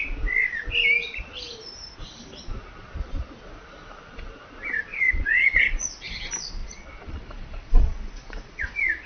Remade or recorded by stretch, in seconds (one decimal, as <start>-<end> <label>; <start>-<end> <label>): 0.0-4.9 recorded; 4.9-5.9 remade; 5.9-6.6 recorded; 6.6-9.1 remade